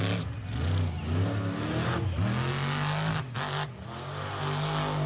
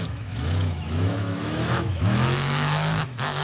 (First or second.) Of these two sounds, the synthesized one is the second